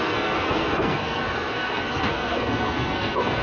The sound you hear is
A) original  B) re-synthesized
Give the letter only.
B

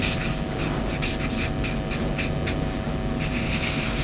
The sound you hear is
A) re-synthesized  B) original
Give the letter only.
B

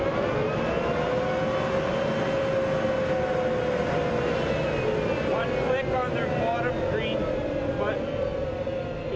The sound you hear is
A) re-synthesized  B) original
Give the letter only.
B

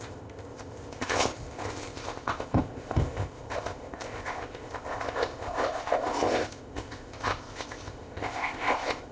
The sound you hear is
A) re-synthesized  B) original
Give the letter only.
A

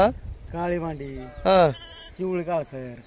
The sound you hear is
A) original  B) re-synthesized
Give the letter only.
A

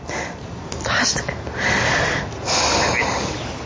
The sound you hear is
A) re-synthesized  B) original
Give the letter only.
B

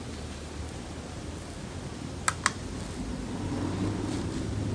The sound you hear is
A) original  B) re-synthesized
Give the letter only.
A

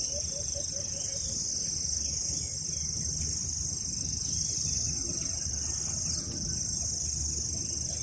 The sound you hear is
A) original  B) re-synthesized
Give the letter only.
A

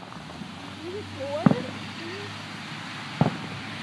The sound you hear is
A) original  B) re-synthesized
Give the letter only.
A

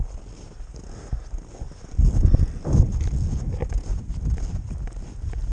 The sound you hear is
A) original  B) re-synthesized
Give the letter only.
A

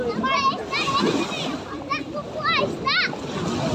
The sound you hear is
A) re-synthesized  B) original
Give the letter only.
B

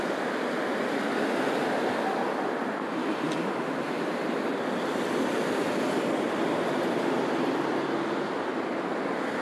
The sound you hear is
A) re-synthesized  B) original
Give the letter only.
B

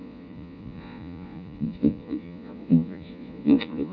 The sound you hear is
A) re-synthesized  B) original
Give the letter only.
A